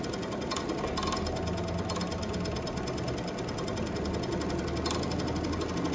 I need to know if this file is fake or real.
real